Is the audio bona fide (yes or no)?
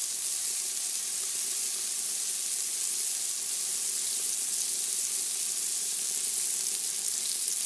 yes